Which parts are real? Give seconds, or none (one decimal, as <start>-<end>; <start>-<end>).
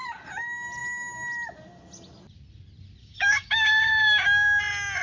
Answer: 0.0-3.0; 4.6-5.0